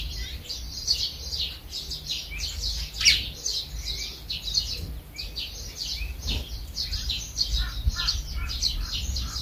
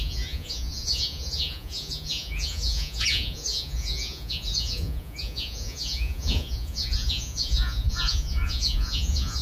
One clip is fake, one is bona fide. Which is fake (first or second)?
second